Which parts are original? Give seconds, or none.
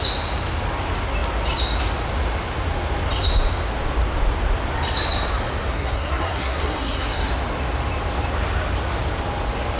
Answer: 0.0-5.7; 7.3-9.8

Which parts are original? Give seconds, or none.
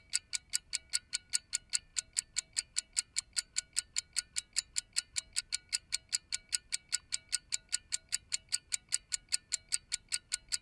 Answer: 0.0-10.6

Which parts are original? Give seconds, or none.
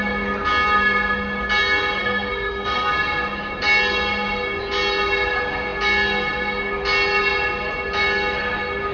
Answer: 0.0-2.0; 2.9-8.9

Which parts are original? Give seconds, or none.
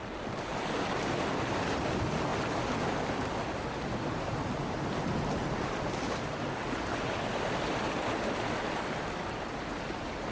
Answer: 0.0-10.3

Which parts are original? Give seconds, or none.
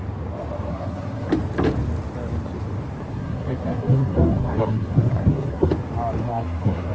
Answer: 0.0-0.7; 1.3-3.1; 5.7-6.2